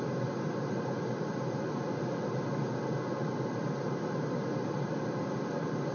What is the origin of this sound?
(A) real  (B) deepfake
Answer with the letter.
A